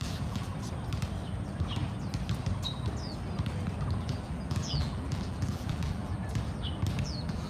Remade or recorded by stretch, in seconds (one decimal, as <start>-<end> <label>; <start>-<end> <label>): 0.0-0.5 remade; 0.5-4.0 recorded; 4.0-6.2 remade; 6.2-7.0 recorded; 7.0-7.5 remade